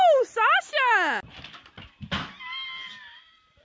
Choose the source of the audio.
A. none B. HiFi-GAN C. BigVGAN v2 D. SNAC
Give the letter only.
A